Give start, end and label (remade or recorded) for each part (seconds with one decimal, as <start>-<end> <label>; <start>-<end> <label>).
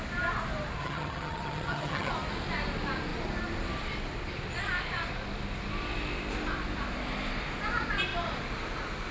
0.0-0.8 recorded; 0.8-2.1 remade; 2.1-9.1 recorded